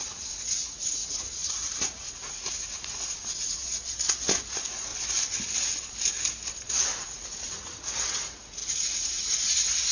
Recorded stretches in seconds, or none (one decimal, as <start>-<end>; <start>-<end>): 3.6-4.4; 4.9-6.8